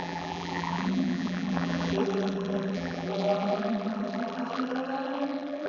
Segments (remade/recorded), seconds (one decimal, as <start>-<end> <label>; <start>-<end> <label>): 0.0-5.7 remade